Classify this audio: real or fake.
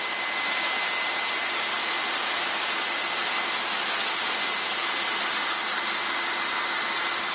real